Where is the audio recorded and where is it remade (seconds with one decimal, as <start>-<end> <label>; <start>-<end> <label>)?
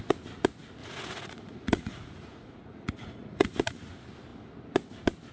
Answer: 0.0-0.8 recorded; 0.8-3.6 remade; 3.6-5.3 recorded